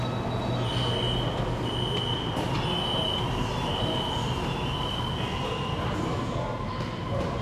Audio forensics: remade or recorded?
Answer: recorded